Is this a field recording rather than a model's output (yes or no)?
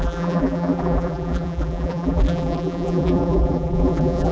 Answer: no